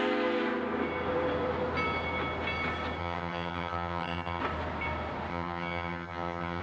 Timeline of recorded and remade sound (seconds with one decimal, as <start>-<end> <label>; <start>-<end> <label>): 0.0-3.0 recorded; 3.0-4.4 remade; 4.4-5.3 recorded; 5.3-6.6 remade